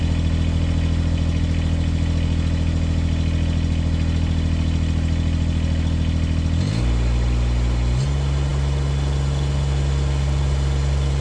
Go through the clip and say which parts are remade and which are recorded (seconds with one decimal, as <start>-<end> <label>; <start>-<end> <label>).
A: 0.0-11.2 recorded